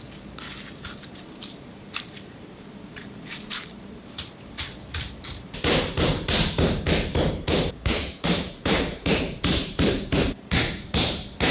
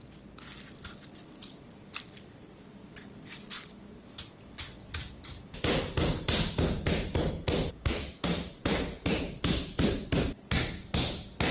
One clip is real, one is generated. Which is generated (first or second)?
first